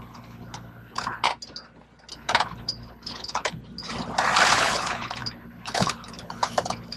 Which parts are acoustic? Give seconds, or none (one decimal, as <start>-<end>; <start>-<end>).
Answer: 1.3-2.1; 3.6-4.5